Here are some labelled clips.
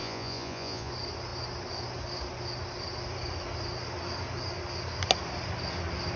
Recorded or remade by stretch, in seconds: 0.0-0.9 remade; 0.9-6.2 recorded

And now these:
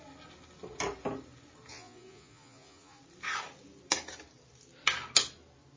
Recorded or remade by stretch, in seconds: 0.0-1.7 recorded; 1.7-3.0 remade; 3.0-5.8 recorded

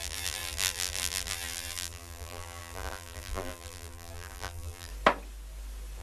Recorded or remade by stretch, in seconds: 0.0-4.9 remade; 4.9-6.0 recorded

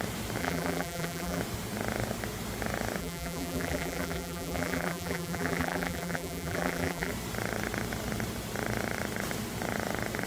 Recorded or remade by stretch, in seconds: 0.0-0.4 recorded; 0.4-1.4 remade; 1.4-3.0 recorded; 3.0-7.1 remade; 7.1-10.3 recorded

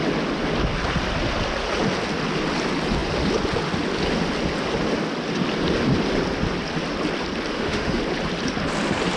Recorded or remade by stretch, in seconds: 0.0-7.5 recorded; 7.5-8.0 remade; 8.0-9.2 recorded

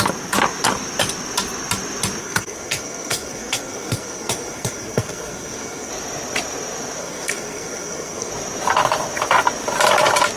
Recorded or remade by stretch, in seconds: 0.0-2.2 recorded; 2.2-5.9 remade; 5.9-7.0 recorded; 7.0-8.3 remade; 8.3-10.4 recorded

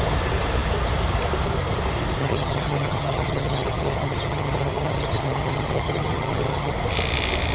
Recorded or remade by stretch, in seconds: 0.0-2.2 recorded; 2.2-6.7 remade; 6.7-7.5 recorded

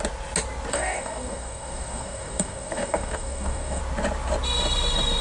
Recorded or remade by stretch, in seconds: 0.0-0.7 recorded; 0.7-3.8 remade; 3.8-5.2 recorded